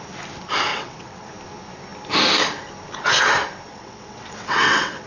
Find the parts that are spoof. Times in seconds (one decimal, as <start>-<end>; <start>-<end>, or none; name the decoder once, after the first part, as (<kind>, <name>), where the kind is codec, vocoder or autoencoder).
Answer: 0.7-1.3 (vocoder, WaveNeXt); 3.7-5.1

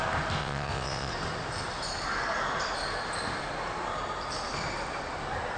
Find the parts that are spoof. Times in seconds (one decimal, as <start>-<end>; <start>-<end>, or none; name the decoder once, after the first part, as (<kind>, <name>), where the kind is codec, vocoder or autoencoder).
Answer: 0.4-1.1 (vocoder, WaveNeXt)

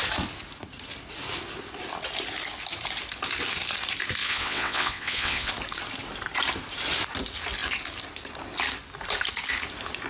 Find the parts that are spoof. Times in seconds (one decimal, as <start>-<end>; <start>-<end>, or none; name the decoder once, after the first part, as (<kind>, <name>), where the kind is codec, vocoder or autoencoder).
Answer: 4.2-5.5 (vocoder, WaveNeXt)

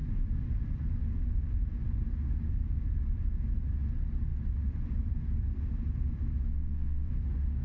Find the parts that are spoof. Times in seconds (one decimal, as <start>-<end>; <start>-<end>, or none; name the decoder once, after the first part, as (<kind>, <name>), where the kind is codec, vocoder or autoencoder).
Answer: 6.5-7.1 (vocoder, WaveNeXt)